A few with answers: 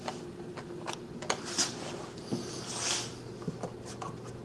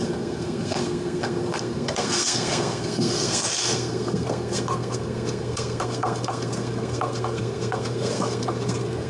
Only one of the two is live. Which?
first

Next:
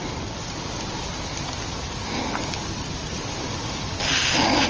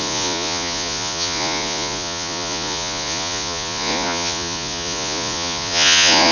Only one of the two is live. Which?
first